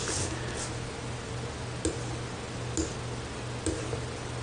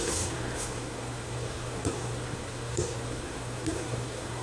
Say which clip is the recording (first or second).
first